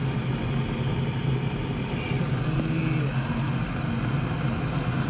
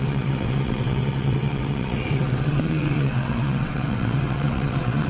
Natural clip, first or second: first